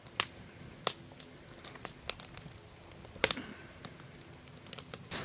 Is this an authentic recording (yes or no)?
yes